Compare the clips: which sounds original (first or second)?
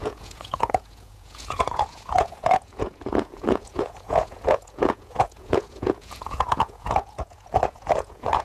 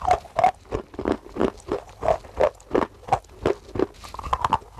second